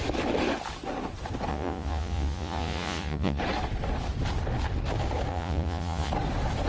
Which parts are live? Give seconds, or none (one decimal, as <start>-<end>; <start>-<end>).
0.0-1.5; 3.4-5.3; 6.1-6.7